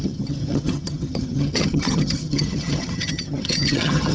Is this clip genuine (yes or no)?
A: no